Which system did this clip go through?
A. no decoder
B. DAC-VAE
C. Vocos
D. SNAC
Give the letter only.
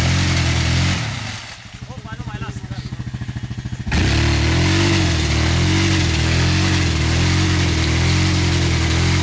A